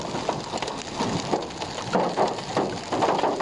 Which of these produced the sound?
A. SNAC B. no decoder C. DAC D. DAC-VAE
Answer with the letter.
B